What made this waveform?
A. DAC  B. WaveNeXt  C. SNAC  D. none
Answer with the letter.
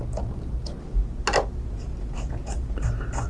D